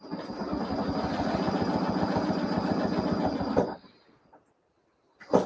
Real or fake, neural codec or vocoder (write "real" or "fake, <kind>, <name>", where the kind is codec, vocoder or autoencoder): real